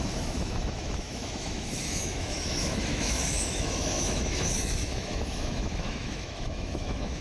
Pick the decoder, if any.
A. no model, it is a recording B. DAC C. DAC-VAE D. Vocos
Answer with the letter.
C